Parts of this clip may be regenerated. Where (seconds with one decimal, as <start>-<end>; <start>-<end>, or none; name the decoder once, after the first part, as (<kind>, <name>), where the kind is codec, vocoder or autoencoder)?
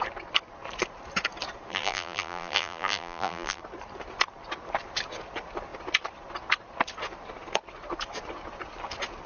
1.7-3.6 (vocoder, BigVGAN v2)